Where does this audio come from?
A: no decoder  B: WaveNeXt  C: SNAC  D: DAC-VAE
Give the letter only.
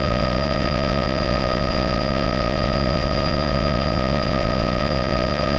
B